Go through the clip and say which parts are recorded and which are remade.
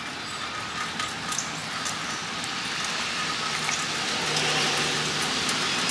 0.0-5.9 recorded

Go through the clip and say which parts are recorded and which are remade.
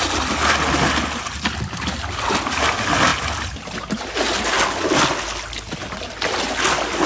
0.0-7.1 recorded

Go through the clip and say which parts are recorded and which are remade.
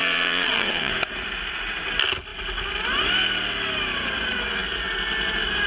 0.0-0.9 remade; 0.9-5.7 recorded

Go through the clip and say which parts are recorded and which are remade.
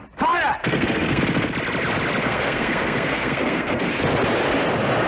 0.0-0.6 recorded; 0.6-1.2 remade; 1.2-2.2 recorded; 2.2-3.8 remade; 3.8-5.1 recorded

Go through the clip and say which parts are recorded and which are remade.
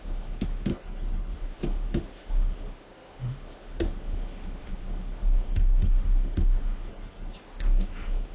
0.0-0.7 remade; 0.7-1.3 recorded; 1.3-6.9 remade; 6.9-7.4 recorded; 7.4-8.3 remade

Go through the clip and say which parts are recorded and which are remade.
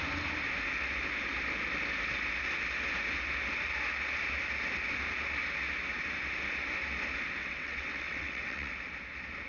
0.0-7.4 recorded; 7.4-8.7 remade; 8.7-9.5 recorded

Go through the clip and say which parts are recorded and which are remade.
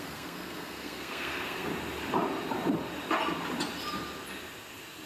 0.0-1.7 remade; 1.7-5.1 recorded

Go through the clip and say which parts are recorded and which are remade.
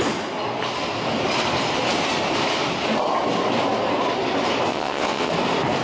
0.0-4.7 recorded; 4.7-5.3 remade; 5.3-5.8 recorded